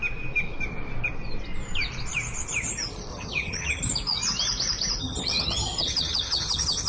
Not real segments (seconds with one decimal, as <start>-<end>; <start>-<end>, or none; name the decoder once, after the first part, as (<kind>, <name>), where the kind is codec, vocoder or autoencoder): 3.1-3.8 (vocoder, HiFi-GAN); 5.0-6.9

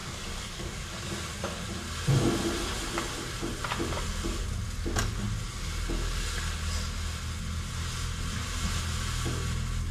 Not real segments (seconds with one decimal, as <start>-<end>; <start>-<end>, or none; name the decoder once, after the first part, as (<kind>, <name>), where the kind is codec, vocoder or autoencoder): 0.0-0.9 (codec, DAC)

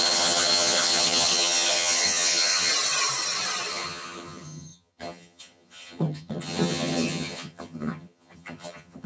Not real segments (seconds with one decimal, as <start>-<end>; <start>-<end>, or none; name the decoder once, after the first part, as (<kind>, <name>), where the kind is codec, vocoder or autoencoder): 0.0-2.7 (vocoder, HiFi-GAN); 3.7-9.1

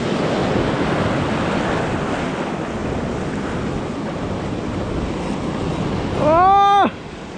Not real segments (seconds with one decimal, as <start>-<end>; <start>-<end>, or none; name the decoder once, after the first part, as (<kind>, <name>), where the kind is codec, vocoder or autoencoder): none

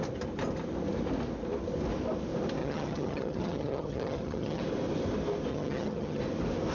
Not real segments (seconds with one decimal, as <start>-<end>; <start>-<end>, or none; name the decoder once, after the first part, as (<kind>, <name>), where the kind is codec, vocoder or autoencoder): 2.6-4.6 (vocoder, HiFi-GAN); 5.5-6.2